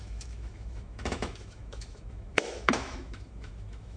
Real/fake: fake